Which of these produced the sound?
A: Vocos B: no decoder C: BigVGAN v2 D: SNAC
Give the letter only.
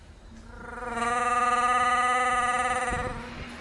B